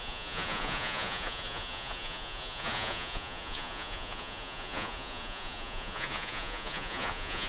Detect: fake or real fake